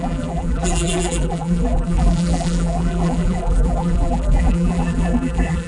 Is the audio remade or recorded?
remade